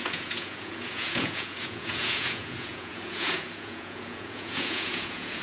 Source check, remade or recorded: remade